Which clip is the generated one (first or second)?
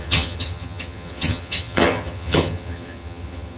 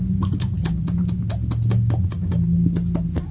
first